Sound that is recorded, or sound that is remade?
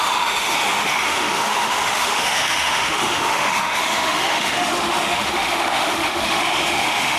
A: remade